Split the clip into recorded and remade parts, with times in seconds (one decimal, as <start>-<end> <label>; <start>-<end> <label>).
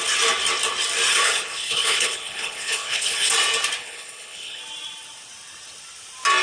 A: 0.0-1.1 recorded; 1.1-3.3 remade; 3.3-3.8 recorded; 3.8-4.6 remade; 4.6-6.4 recorded